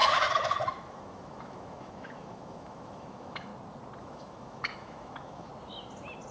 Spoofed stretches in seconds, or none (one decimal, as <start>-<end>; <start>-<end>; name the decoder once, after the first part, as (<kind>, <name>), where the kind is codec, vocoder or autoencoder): 0.0-3.5 (autoencoder, DAC-VAE); 4.0-5.5